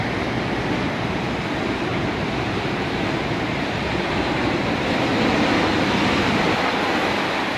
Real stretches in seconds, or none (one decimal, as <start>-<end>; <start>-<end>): 0.0-1.9; 4.6-7.6

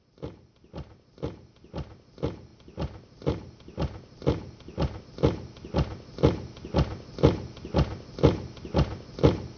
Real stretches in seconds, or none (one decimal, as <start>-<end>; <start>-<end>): 0.0-2.5; 5.0-9.6

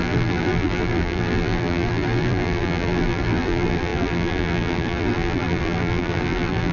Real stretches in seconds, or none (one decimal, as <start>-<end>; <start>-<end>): none